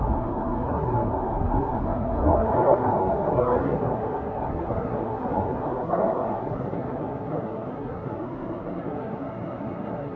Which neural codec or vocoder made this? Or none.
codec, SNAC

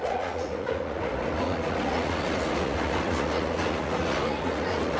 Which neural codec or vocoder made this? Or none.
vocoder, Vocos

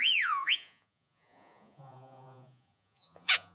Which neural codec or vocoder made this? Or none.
vocoder, Vocos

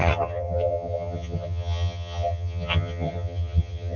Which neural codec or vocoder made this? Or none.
vocoder, HiFi-GAN